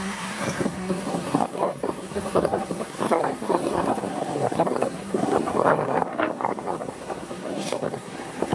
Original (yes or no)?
no